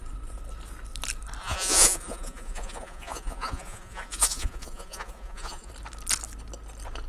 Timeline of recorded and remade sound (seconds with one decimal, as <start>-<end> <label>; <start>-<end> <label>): 0.0-1.4 recorded; 1.4-5.7 remade; 5.7-7.1 recorded